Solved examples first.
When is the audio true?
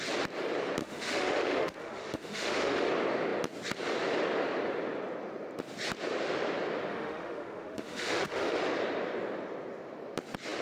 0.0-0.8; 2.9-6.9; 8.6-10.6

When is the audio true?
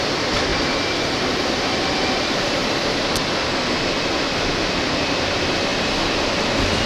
0.5-1.4; 2.6-4.6; 5.7-6.9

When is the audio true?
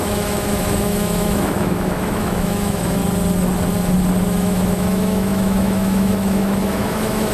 3.0-4.2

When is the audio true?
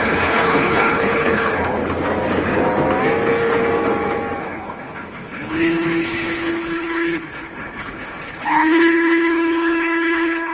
1.8-4.4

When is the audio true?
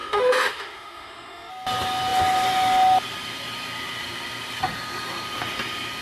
1.5-6.0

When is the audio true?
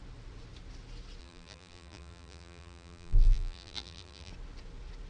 0.0-1.2; 4.3-5.1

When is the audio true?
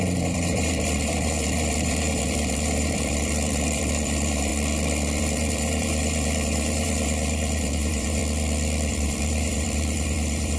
4.5-5.2; 8.2-8.9